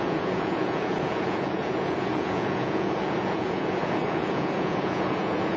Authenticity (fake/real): fake